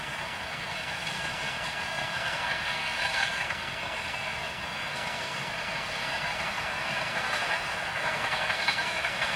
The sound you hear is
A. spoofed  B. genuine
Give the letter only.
A